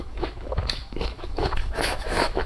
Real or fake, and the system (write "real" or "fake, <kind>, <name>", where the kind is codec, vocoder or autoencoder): fake, autoencoder, DAC-VAE